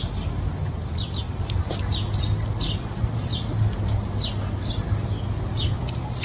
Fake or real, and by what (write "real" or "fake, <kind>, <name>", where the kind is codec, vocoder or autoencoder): real